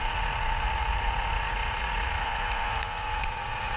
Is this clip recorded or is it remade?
remade